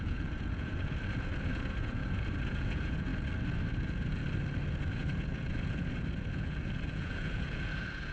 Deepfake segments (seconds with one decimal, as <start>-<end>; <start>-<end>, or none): 0.0-3.1; 3.7-4.2; 4.8-8.1